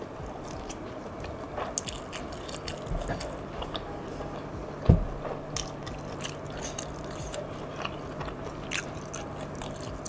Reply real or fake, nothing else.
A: real